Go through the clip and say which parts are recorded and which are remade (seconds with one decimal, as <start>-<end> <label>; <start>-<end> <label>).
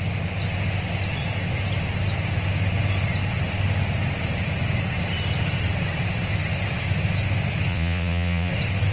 0.0-7.7 recorded; 7.7-8.5 remade; 8.5-8.9 recorded